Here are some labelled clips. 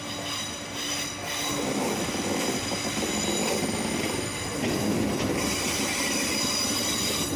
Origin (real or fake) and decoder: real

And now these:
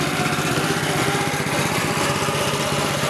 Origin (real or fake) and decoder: fake, vocoder, BigVGAN v2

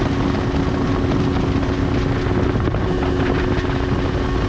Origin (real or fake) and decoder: real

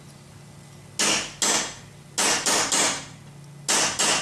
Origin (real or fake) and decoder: real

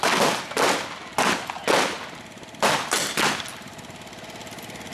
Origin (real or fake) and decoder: real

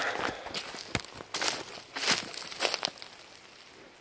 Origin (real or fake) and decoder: real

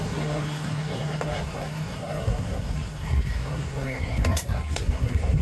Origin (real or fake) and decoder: fake, codec, SNAC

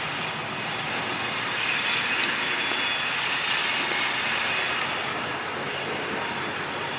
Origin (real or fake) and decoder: real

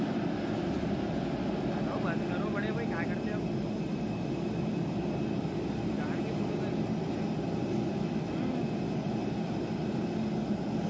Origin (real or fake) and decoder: real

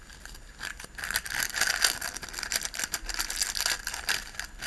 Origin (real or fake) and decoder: real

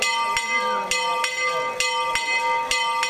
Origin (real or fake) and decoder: real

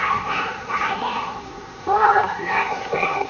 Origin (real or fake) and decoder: fake, codec, SNAC